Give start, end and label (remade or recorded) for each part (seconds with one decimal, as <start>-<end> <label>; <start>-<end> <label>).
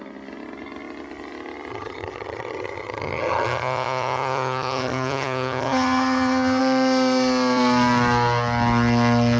0.0-1.7 recorded; 1.7-6.6 remade; 6.6-9.4 recorded